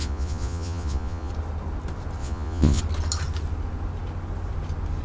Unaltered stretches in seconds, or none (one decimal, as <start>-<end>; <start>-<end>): 1.3-2.2; 2.8-5.0